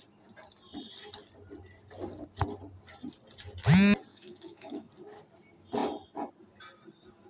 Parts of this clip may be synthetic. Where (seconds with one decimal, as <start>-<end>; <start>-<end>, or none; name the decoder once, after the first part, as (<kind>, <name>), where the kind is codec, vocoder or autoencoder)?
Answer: 4.1-4.9 (autoencoder, DAC-VAE)